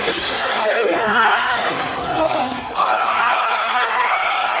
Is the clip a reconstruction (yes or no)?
yes